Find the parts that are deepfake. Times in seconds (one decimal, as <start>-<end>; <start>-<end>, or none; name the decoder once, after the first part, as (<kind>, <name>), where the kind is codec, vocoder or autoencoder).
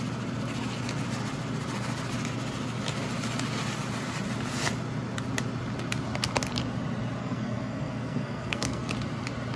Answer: 7.2-8.9 (codec, SNAC)